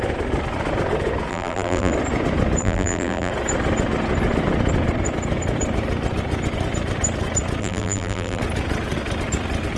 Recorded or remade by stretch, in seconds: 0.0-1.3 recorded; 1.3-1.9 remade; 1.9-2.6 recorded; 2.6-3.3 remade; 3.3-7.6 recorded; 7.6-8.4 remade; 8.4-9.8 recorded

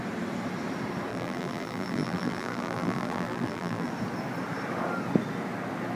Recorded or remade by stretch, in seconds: 0.0-1.1 recorded; 1.1-3.9 remade; 3.9-6.0 recorded

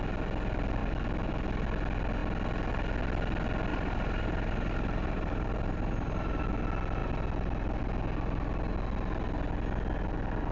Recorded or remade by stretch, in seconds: 0.0-3.7 recorded; 3.7-6.4 remade; 6.4-10.5 recorded

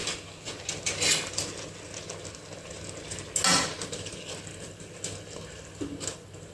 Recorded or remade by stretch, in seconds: 0.0-6.5 recorded

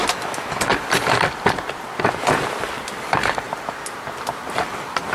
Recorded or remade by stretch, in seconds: 0.0-0.7 recorded; 0.7-3.8 remade; 3.8-5.1 recorded

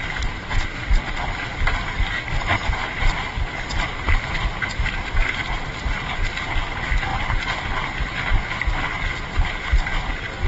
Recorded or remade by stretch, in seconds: 0.0-10.5 recorded